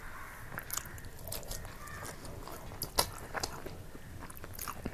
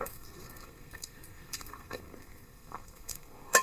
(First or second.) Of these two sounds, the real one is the first